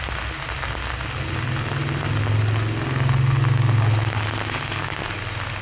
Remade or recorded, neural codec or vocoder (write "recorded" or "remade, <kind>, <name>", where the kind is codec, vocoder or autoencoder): recorded